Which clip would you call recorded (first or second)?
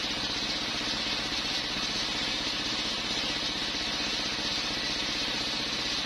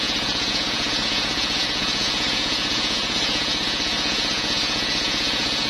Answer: first